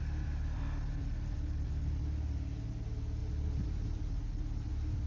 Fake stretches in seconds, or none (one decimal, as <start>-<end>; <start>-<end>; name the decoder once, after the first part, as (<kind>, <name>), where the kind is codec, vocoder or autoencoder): none